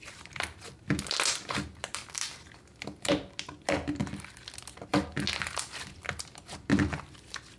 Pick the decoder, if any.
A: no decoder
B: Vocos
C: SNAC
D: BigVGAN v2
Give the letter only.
A